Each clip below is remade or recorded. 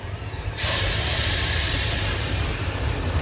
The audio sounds remade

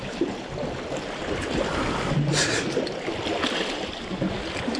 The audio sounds recorded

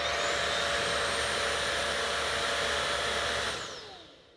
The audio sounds recorded